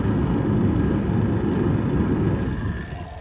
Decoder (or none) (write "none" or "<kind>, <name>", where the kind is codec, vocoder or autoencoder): none